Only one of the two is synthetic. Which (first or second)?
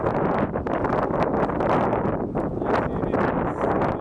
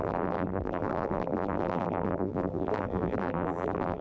second